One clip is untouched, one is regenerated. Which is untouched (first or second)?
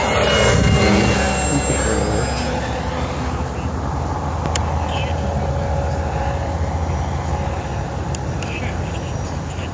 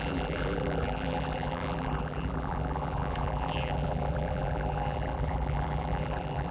first